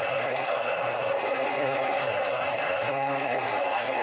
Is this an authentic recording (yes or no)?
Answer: no